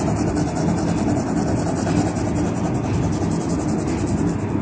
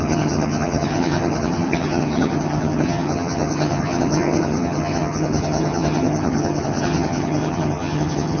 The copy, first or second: second